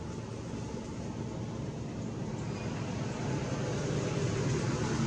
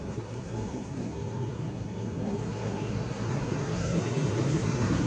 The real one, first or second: first